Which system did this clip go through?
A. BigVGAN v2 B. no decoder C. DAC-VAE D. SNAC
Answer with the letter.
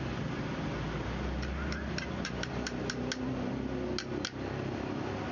B